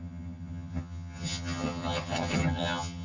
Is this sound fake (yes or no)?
yes